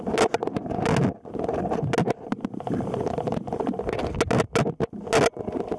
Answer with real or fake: real